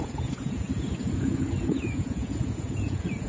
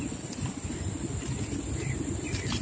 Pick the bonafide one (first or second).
second